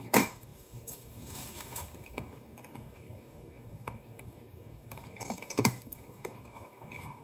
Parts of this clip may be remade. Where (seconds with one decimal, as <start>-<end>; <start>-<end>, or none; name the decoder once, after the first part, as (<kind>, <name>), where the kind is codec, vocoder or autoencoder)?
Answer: 0.0-7.2 (codec, DAC)